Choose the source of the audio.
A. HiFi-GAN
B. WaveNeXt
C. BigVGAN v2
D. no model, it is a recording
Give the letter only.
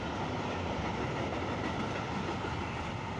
D